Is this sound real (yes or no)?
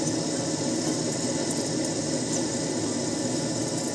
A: yes